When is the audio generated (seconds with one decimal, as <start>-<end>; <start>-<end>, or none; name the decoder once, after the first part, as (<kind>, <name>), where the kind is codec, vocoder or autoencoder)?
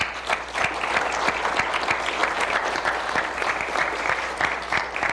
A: 2.2-5.1 (vocoder, BigVGAN v2)